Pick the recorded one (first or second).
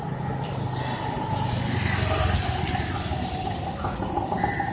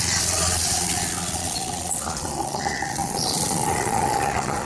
first